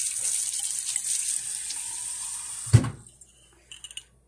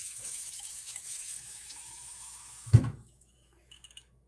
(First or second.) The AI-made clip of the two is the second